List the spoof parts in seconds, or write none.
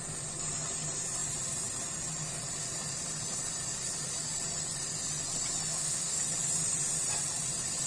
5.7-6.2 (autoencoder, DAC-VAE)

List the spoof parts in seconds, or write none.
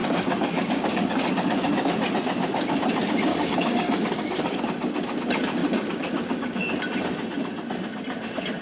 0.0-1.9 (codec, DAC); 3.3-4.6; 5.6-6.8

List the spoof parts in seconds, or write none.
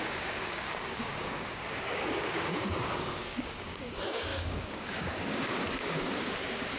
0.0-6.8 (codec, DAC)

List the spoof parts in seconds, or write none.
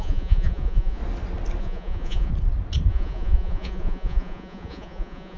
0.0-1.0 (vocoder, Vocos); 1.6-2.3; 2.9-5.4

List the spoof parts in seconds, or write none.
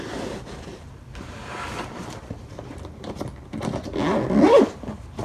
0.0-3.3 (vocoder, BigVGAN v2)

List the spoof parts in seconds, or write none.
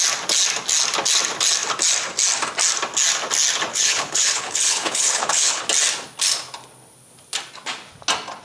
3.7-5.6 (codec, HILCodec)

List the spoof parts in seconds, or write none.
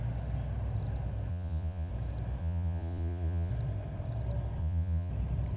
1.3-1.9 (vocoder, Vocos); 2.4-3.5; 4.6-5.1